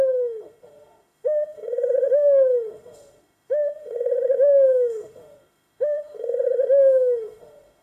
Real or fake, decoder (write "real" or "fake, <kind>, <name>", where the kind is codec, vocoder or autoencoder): fake, autoencoder, DAC-VAE